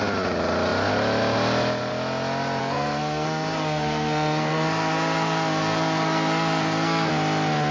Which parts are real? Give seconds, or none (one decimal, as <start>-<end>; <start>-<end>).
0.0-2.6; 7.1-7.7